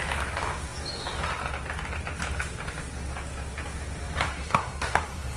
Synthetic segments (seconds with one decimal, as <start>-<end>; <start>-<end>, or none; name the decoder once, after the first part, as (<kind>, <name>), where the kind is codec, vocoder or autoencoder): 4.3-5.4 (codec, SNAC)